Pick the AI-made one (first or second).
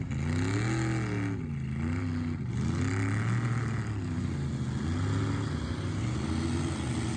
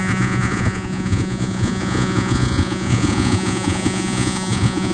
second